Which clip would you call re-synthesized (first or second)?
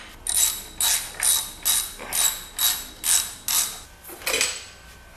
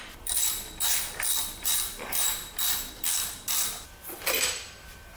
second